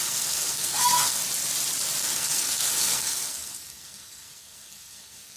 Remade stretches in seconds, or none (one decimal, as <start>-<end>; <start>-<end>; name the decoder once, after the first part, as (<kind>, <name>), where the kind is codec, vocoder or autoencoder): 0.0-1.2 (codec, SNAC); 2.0-5.4